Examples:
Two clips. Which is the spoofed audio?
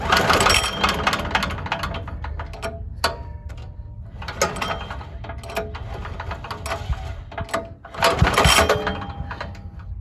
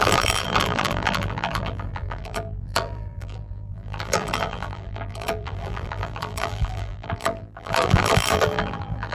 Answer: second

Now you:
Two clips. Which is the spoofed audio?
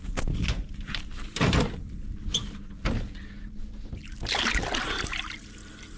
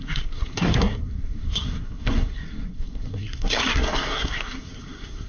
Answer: second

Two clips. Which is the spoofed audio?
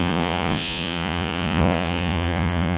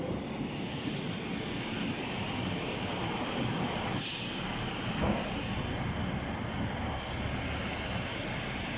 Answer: first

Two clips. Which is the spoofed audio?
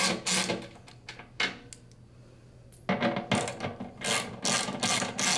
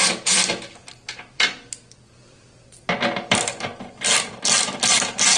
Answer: second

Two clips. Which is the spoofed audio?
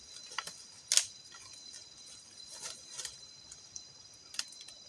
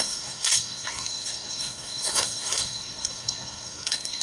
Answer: second